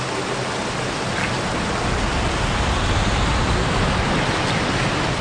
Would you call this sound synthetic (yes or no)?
no